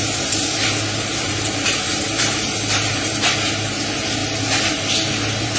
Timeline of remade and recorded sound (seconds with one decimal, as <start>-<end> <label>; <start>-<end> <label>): 0.0-4.2 remade; 4.2-5.1 recorded; 5.1-5.6 remade